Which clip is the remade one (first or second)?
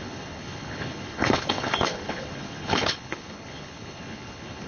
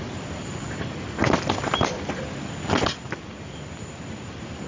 first